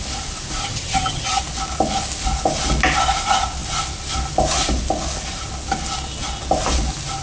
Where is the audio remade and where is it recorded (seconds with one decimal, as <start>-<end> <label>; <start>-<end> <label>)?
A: 0.0-0.6 recorded; 0.6-1.4 remade; 1.4-7.2 recorded